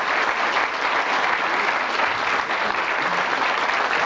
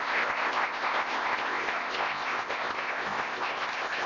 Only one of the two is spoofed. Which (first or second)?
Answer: second